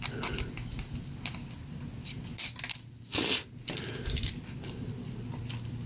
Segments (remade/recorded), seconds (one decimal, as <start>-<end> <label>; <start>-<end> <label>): 0.0-5.9 recorded